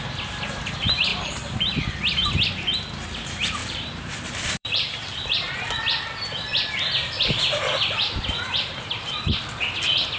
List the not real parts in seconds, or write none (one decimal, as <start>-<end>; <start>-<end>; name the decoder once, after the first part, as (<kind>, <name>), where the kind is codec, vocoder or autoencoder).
1.1-1.7 (vocoder, BigVGAN v2); 3.6-5.7